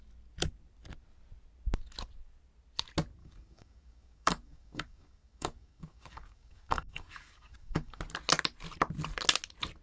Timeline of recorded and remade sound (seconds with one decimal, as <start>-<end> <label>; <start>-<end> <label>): 0.0-3.2 recorded; 3.2-8.0 remade; 8.0-9.8 recorded